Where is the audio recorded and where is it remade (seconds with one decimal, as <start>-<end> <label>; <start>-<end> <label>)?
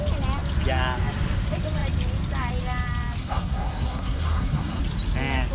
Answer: 0.0-3.2 recorded; 3.2-4.8 remade; 4.8-5.5 recorded